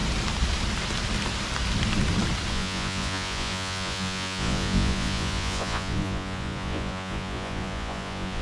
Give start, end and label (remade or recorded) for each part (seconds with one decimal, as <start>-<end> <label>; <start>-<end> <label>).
0.0-2.5 recorded; 2.5-8.4 remade